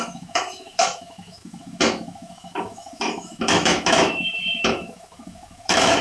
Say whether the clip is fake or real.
fake